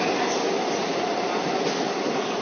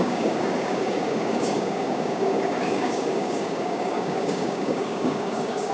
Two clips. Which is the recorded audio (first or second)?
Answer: first